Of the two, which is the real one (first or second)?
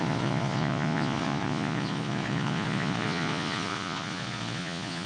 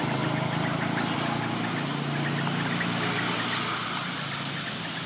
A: second